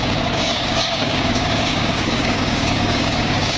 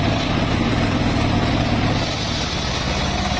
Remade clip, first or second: first